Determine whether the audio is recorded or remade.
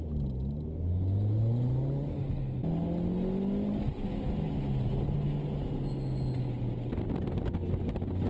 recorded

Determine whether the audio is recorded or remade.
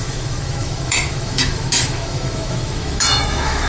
remade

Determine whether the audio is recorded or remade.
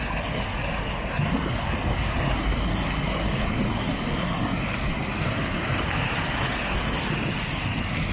recorded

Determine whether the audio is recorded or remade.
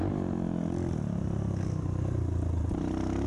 recorded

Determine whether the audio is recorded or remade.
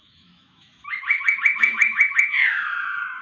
remade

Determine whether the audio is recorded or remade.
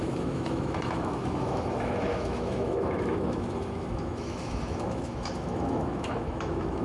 remade